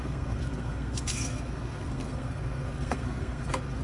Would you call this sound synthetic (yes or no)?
yes